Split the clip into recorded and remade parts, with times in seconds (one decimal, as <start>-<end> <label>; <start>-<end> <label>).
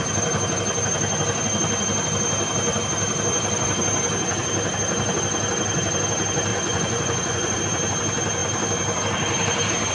0.0-6.5 recorded; 6.5-7.6 remade; 7.6-9.9 recorded